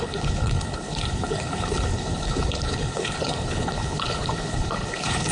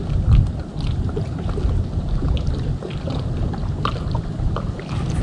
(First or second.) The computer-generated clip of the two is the first